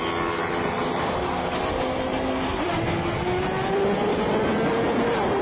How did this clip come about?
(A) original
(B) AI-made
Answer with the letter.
A